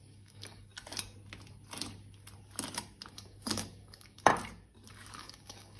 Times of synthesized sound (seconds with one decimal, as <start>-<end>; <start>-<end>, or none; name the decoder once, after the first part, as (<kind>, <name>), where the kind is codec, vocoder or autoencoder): 0.0-0.7 (codec, DAC); 3.1-4.3; 4.9-5.8